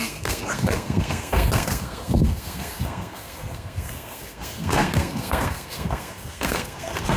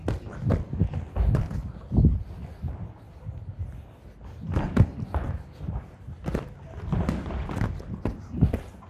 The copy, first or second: first